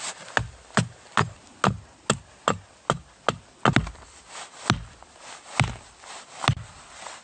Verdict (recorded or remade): recorded